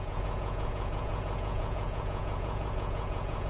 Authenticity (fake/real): fake